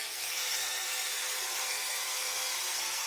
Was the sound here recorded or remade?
remade